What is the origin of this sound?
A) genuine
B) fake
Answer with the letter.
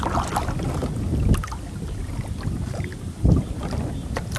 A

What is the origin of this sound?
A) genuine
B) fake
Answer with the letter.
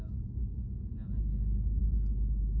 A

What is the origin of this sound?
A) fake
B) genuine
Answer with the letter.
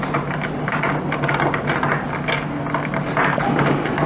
B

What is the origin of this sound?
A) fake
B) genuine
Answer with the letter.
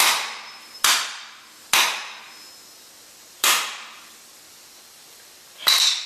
B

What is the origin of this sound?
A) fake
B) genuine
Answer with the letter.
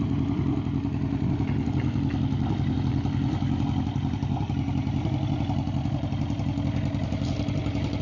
B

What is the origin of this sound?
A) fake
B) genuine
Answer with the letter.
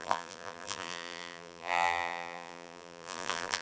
A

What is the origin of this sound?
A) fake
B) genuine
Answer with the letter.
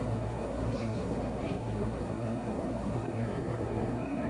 A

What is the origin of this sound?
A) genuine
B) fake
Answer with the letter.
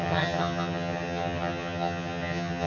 B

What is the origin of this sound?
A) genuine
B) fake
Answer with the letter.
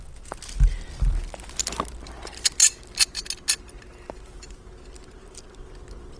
A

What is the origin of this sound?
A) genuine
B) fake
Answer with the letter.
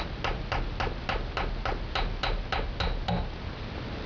A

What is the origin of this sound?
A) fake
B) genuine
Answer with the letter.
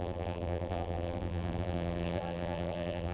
A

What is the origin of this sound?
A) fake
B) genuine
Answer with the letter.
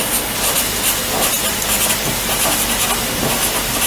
B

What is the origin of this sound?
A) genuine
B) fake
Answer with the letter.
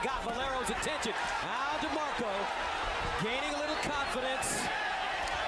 A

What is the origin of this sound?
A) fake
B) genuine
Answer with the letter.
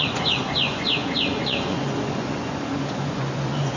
A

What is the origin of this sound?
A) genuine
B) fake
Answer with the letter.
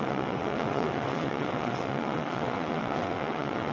B